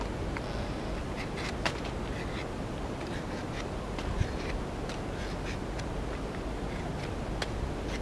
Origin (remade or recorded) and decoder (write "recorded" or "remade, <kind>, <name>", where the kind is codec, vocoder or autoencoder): recorded